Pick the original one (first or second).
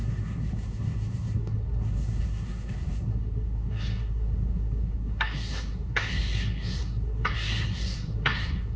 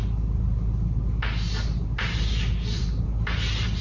second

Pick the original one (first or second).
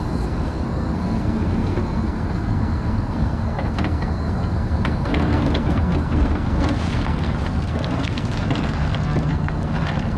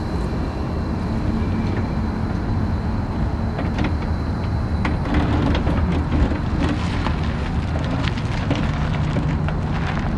second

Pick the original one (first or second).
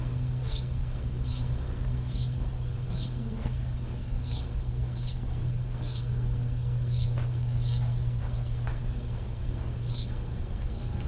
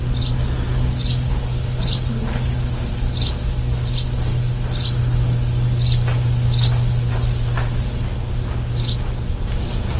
second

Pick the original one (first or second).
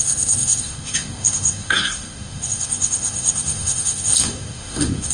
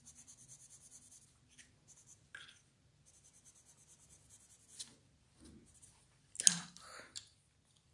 second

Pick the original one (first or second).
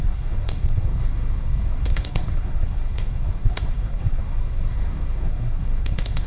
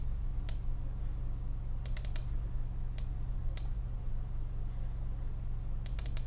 second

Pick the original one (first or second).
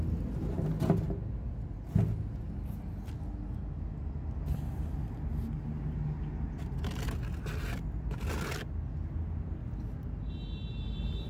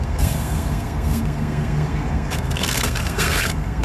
first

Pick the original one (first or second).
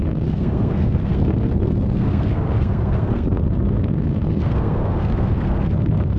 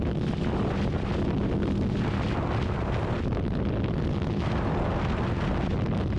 second